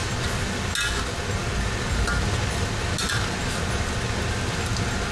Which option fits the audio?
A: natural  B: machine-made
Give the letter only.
A